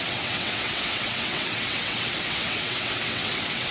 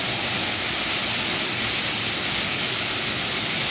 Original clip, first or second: second